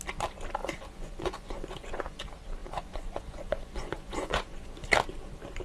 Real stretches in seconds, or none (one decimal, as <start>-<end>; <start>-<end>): 0.0-0.6; 2.2-2.6; 4.9-5.6